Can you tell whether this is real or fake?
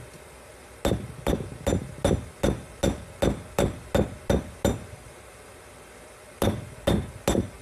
real